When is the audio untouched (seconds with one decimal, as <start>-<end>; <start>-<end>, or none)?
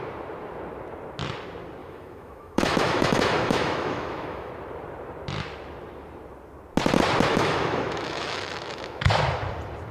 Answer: 0.0-1.8; 4.5-7.3; 9.0-9.9